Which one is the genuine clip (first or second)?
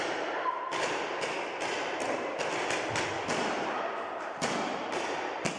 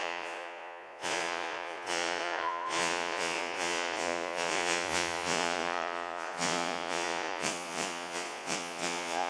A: first